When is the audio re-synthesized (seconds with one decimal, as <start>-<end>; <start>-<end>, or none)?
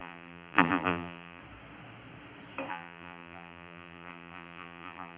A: 0.0-1.4; 2.7-5.2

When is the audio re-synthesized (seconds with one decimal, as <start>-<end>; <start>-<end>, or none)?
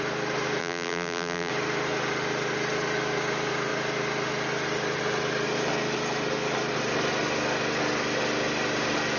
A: 0.6-1.5